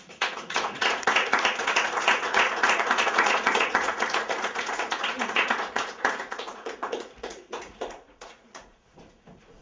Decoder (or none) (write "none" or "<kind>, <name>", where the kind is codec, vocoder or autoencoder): vocoder, Vocos